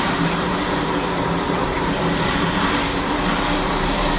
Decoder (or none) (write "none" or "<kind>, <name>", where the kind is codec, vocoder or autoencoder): vocoder, BigVGAN v2